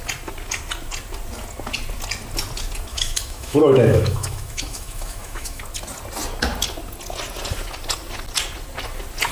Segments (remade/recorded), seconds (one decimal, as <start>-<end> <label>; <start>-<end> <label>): 0.0-2.9 recorded; 2.9-5.6 remade; 5.6-9.3 recorded